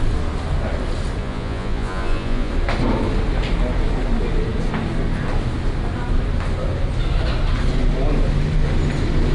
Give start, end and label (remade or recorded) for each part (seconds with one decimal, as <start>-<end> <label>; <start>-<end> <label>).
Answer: 0.0-1.2 recorded; 1.2-2.5 remade; 2.5-9.3 recorded